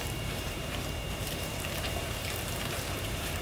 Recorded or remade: remade